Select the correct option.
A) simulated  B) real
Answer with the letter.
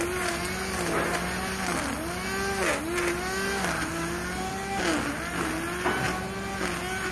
B